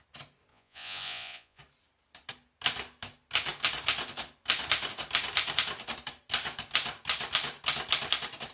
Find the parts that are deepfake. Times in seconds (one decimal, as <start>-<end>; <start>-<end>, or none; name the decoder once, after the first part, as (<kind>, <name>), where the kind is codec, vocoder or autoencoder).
0.5-1.6 (vocoder, Vocos)